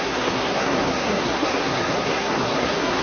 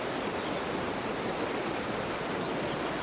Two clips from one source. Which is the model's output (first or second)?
first